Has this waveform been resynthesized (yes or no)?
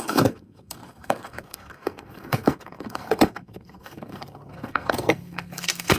yes